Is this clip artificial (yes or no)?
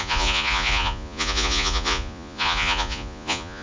yes